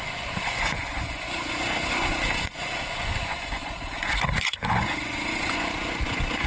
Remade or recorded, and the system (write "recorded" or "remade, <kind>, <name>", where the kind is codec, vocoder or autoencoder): remade, vocoder, Vocos